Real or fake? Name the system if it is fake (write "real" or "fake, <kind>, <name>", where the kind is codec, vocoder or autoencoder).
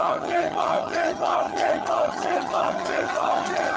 fake, vocoder, HiFi-GAN